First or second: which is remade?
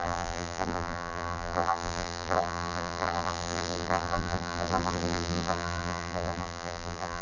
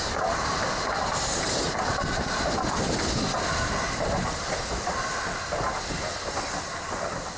first